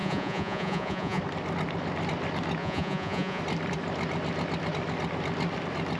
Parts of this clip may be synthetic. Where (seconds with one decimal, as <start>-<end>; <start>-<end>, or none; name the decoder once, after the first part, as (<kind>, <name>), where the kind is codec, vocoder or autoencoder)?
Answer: 0.0-1.2 (vocoder, Vocos); 2.6-3.4